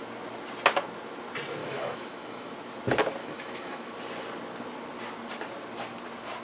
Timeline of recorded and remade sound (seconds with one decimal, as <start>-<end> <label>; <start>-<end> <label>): 0.0-1.6 recorded; 1.6-2.5 remade; 2.5-3.2 recorded; 3.2-3.9 remade; 3.9-6.4 recorded